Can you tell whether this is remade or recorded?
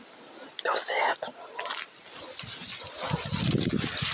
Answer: recorded